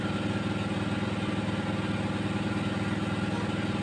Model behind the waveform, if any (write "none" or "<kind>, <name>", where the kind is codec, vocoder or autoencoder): none